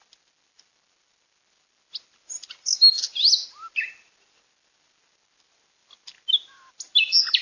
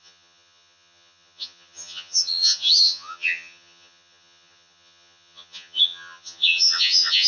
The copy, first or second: second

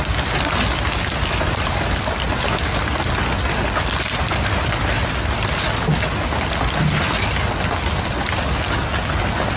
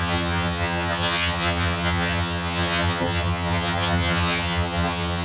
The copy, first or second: second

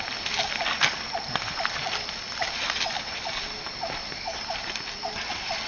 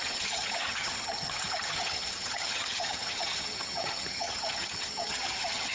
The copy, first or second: second